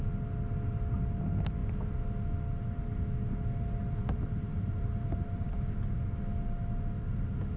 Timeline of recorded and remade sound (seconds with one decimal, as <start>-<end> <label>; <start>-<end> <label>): 0.0-3.8 recorded; 3.8-5.5 remade; 5.5-7.6 recorded